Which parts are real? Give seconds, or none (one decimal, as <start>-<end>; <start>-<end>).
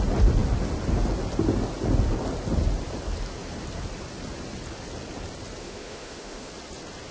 0.0-5.6; 6.5-7.1